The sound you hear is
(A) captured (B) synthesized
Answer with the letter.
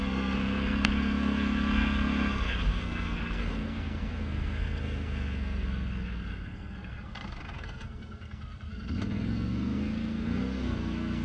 B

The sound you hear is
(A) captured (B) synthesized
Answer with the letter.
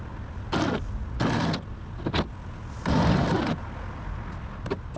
A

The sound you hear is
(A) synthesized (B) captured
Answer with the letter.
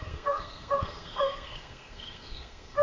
A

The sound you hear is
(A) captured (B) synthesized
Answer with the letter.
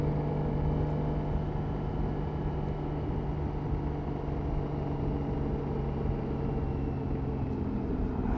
A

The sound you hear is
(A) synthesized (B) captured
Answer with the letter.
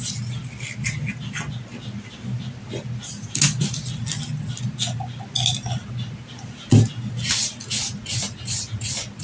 B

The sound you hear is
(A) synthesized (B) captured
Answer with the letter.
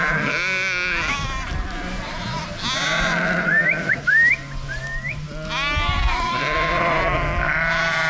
B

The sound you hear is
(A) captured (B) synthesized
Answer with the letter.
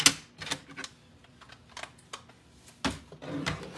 A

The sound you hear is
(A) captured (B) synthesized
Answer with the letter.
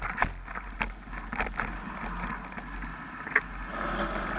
A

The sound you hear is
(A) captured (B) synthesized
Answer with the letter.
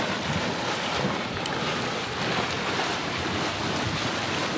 A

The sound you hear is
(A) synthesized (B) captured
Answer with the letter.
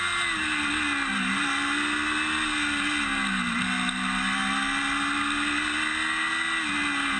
B